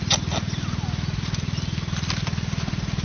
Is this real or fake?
real